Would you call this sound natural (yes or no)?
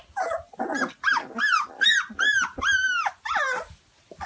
yes